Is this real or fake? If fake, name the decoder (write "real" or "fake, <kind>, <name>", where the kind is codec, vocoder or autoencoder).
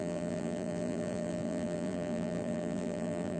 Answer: fake, vocoder, BigVGAN v2